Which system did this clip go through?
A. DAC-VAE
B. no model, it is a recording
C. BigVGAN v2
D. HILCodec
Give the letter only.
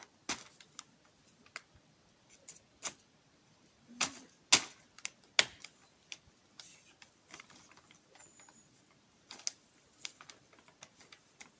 B